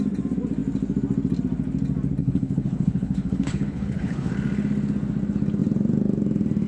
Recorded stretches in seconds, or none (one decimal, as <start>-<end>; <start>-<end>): 0.0-2.2; 4.3-6.7